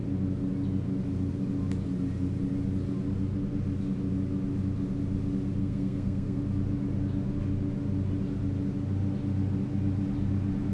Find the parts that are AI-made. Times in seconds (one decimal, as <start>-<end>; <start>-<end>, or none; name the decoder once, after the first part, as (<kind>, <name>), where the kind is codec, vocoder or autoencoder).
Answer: 5.6-6.4 (codec, SNAC)